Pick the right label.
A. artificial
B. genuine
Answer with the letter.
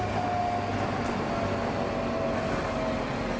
B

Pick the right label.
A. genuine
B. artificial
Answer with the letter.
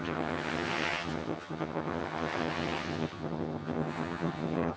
B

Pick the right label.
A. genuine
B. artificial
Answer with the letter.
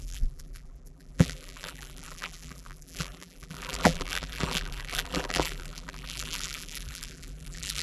B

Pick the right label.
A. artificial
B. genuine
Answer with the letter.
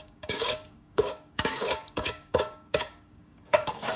A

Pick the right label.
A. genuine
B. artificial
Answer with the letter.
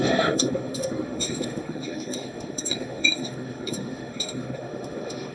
B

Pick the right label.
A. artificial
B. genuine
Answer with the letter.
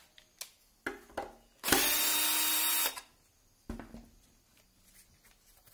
B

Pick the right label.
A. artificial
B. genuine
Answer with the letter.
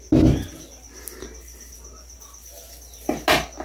B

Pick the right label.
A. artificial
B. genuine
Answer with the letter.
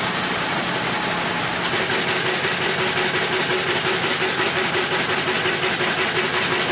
B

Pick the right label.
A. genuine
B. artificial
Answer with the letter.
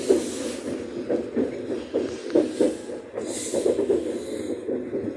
A